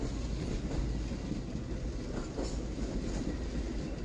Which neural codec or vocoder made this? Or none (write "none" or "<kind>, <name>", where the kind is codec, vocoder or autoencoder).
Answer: none